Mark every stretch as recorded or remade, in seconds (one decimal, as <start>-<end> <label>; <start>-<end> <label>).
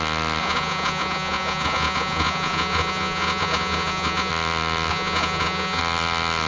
0.0-0.4 recorded; 0.4-4.3 remade; 4.3-4.9 recorded; 4.9-5.8 remade; 5.8-6.5 recorded